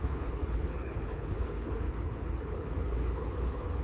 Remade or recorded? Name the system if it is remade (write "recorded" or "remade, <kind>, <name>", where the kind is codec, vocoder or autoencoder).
remade, codec, HILCodec